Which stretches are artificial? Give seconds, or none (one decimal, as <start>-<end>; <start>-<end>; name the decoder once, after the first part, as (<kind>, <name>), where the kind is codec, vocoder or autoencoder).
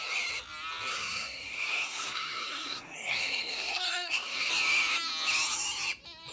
0.9-4.5 (codec, SNAC)